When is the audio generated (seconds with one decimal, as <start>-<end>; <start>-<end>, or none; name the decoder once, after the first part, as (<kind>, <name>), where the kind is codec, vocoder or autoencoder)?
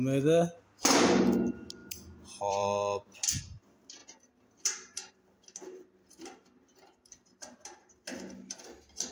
1.8-3.4 (vocoder, BigVGAN v2)